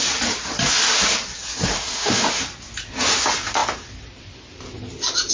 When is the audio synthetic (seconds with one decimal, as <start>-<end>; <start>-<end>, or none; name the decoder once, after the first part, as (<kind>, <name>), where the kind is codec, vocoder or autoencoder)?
1.8-2.4 (autoencoder, DAC-VAE)